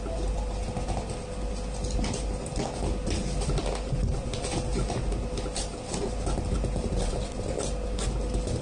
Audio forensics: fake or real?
real